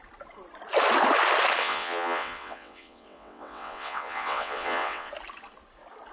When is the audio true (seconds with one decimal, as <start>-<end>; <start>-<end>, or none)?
0.0-1.6; 5.1-6.1